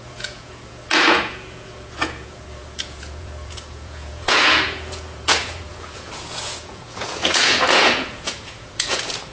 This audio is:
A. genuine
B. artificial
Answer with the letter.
B